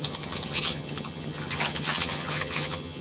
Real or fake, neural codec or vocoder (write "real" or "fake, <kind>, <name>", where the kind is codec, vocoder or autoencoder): fake, vocoder, HiFi-GAN